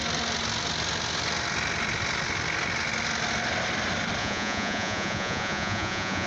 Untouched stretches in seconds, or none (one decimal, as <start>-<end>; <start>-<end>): 0.0-4.2